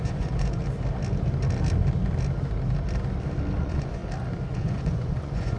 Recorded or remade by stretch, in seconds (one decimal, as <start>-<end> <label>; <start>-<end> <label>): 0.0-0.6 remade; 0.6-3.6 recorded; 3.6-4.0 remade; 4.0-4.5 recorded; 4.5-5.6 remade